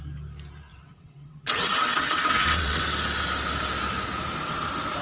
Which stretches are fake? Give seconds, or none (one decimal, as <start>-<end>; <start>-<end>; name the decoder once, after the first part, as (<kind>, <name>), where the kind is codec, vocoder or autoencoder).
0.7-2.8 (vocoder, WaveNeXt)